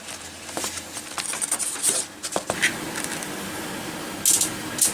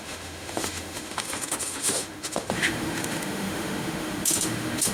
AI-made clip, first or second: second